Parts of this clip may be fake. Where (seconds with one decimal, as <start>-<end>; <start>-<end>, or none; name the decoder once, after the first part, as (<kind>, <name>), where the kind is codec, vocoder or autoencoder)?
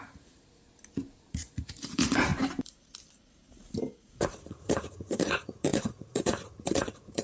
0.0-0.6 (vocoder, Vocos); 1.3-2.3; 3.9-7.2